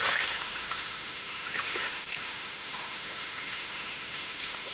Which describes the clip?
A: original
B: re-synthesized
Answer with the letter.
B